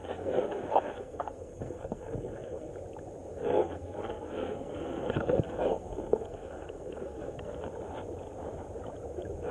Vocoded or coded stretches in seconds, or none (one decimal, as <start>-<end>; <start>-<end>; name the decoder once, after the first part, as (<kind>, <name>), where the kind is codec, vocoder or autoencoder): 0.0-2.7 (codec, SNAC); 3.3-7.6